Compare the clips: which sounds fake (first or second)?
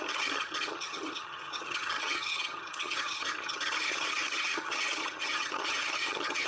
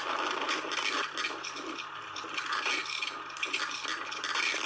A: first